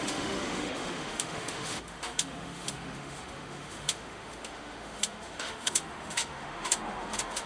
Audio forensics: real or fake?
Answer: fake